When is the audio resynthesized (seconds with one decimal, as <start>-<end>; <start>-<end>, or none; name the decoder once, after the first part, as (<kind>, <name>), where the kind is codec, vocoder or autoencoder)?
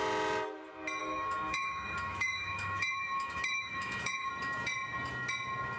1.0-4.3 (autoencoder, DAC-VAE)